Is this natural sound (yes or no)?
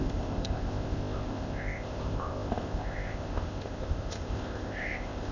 no